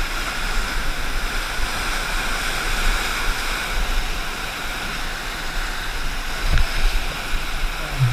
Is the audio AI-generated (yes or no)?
no